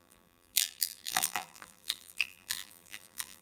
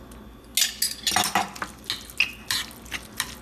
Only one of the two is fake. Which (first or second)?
first